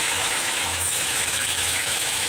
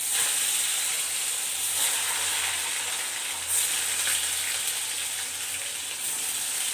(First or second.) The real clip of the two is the second